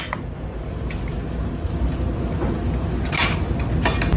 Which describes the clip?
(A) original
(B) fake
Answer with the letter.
A